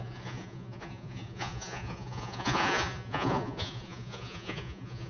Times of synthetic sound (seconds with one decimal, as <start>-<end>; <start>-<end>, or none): 0.0-5.1